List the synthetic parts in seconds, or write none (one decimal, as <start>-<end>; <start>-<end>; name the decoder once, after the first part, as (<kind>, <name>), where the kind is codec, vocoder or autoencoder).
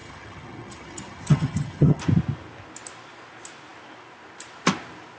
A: 0.0-2.0 (vocoder, HiFi-GAN)